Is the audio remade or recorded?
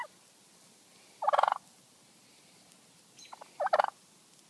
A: recorded